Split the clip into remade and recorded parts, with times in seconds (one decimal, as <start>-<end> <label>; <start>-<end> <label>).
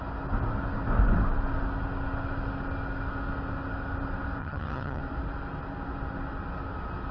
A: 0.0-4.4 recorded; 4.4-5.0 remade; 5.0-7.1 recorded